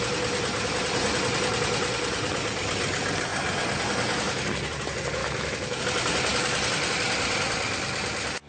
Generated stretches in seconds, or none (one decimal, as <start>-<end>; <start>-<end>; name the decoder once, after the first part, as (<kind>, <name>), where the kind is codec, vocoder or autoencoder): 5.2-5.8 (autoencoder, DAC-VAE)